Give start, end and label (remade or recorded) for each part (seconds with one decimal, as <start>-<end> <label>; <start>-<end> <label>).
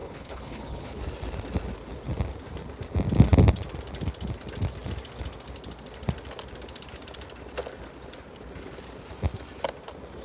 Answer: 0.0-1.0 remade; 1.0-10.2 recorded